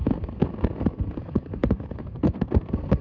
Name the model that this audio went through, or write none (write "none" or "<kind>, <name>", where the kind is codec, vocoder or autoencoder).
codec, SNAC